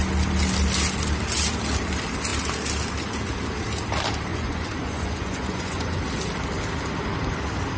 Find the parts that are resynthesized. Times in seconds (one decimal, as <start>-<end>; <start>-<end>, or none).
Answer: 4.3-6.0